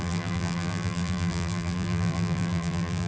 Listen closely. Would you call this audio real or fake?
fake